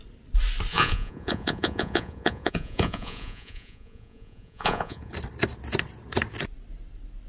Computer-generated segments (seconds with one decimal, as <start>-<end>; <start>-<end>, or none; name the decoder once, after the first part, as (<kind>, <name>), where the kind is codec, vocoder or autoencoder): 0.7-5.1 (vocoder, Vocos)